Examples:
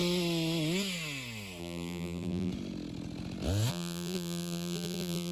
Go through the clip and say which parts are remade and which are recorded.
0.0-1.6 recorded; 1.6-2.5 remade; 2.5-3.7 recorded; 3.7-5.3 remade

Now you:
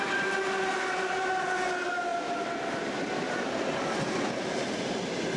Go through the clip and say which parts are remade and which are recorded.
0.0-2.1 recorded; 2.1-3.3 remade; 3.3-5.4 recorded